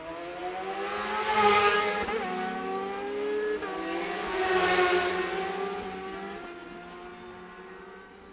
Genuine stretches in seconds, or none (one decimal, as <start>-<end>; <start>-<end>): 0.0-8.3